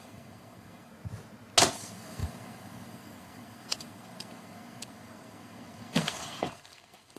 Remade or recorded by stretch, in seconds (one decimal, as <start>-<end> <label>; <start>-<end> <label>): 0.0-0.9 remade; 0.9-1.7 recorded; 1.7-7.2 remade